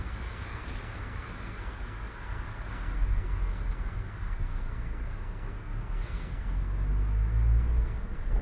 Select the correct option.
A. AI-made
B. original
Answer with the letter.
A